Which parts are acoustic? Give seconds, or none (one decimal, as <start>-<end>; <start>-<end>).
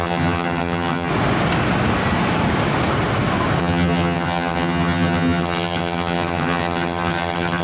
1.1-3.6